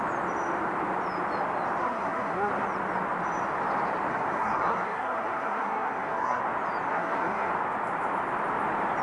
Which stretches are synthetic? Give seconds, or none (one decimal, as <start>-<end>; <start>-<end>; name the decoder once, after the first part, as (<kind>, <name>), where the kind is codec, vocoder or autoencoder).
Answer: 1.8-2.5 (codec, SNAC); 4.1-6.4; 6.9-7.5